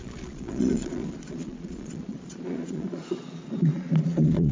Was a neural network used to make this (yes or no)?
yes